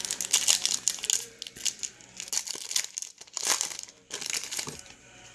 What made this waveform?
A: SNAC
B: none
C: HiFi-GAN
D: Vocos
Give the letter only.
B